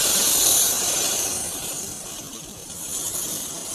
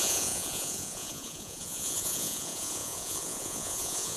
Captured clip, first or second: first